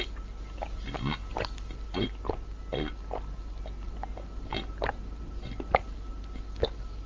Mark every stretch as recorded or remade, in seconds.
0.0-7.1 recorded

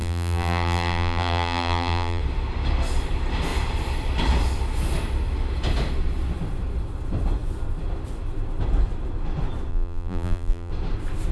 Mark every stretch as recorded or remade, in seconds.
0.0-2.2 remade; 2.2-9.7 recorded; 9.7-10.7 remade; 10.7-11.3 recorded

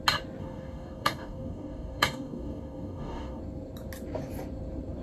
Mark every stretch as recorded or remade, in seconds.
0.0-0.4 recorded; 0.4-3.4 remade; 3.4-5.0 recorded